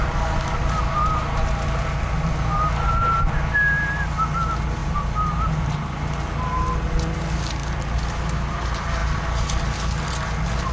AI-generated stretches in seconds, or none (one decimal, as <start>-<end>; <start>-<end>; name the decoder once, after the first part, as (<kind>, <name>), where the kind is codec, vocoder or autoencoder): 4.8-6.3 (vocoder, BigVGAN v2)